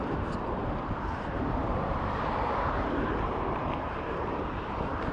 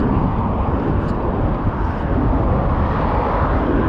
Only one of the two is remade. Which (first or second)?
first